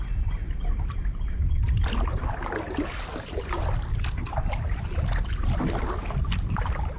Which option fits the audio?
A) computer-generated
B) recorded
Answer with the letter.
B